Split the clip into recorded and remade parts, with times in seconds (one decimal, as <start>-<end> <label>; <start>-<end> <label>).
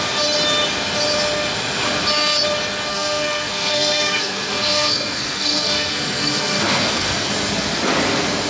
0.0-2.9 recorded; 2.9-7.3 remade; 7.3-8.5 recorded